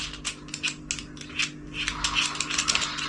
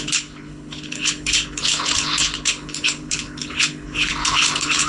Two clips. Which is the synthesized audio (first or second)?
second